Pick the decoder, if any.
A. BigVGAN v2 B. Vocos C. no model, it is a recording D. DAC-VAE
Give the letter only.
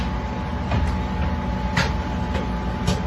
C